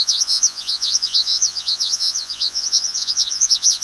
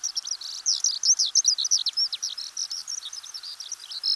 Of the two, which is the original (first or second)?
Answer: second